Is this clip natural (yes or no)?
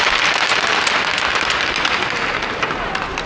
yes